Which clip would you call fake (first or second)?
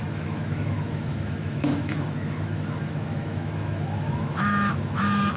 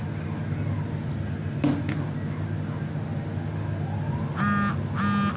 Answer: first